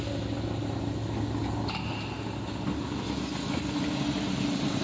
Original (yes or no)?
yes